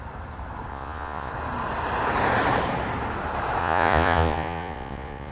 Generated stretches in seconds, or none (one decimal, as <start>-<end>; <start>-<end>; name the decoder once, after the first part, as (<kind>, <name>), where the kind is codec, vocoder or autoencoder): 0.7-1.3 (vocoder, Vocos); 3.6-5.3